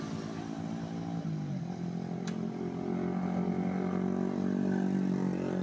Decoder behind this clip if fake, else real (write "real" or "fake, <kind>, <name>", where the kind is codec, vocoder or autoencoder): real